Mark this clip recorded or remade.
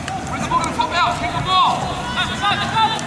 recorded